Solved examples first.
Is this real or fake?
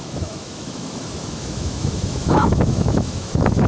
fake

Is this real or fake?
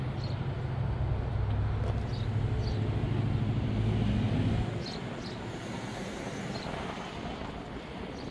real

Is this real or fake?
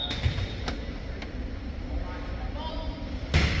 real